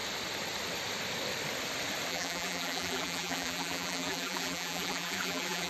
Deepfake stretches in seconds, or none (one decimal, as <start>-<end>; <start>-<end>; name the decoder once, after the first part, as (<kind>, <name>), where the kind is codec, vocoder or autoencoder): 2.1-5.7 (vocoder, BigVGAN v2)